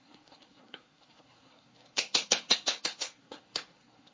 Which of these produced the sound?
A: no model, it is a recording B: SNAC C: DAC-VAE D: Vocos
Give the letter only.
B